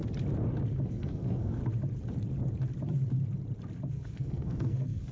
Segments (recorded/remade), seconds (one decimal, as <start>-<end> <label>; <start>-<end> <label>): 0.0-0.9 recorded; 0.9-1.6 remade; 1.6-3.9 recorded; 3.9-5.1 remade